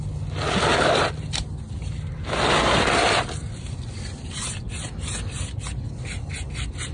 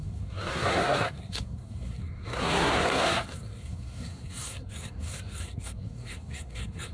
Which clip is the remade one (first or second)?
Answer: second